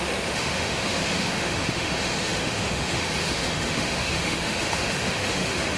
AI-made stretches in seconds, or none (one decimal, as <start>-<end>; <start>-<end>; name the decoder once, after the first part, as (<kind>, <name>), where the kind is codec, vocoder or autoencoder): 0.0-5.8 (autoencoder, DAC-VAE)